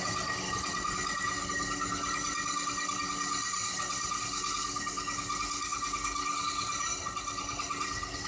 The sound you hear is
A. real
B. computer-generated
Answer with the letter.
A